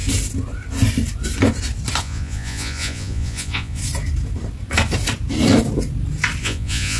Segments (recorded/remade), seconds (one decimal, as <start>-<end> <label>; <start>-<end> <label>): 0.0-2.0 recorded; 2.0-3.8 remade; 3.8-6.4 recorded; 6.4-7.0 remade